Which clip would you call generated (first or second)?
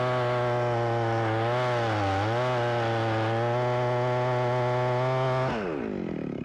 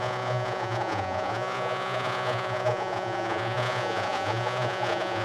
second